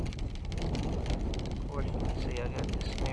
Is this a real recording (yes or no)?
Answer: yes